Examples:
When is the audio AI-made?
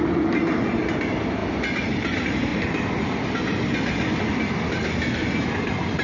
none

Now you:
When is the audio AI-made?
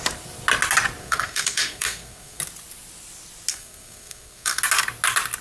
1.0-2.4 (codec, SNAC); 3.5-4.6